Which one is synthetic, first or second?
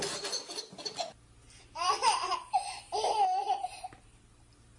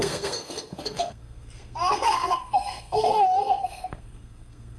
second